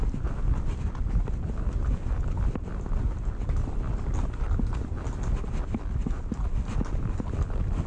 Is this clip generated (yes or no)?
no